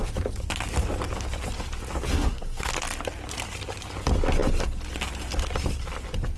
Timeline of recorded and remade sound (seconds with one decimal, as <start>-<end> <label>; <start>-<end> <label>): 0.0-2.1 recorded; 2.1-2.7 remade; 2.7-6.4 recorded